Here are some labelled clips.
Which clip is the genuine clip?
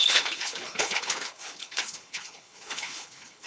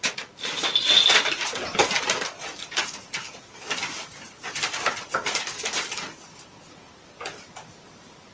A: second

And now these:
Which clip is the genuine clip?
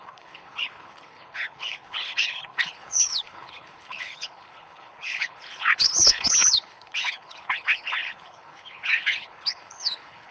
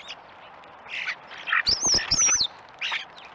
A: second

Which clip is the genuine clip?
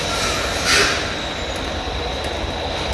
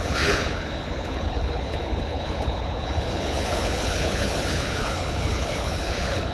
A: first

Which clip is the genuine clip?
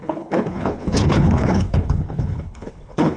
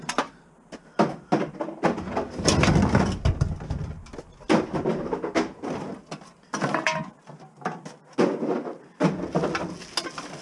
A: second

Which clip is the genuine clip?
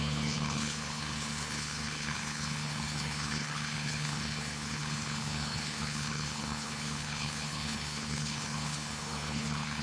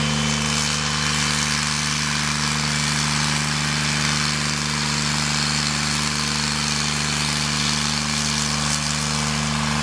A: second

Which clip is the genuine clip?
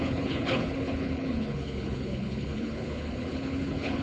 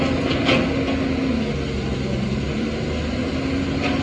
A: second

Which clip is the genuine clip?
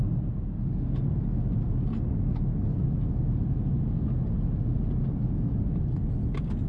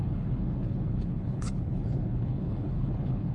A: first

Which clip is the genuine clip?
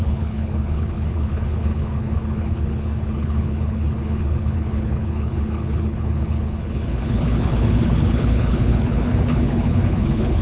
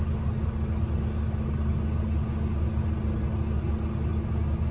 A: second